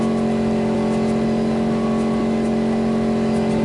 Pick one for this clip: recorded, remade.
recorded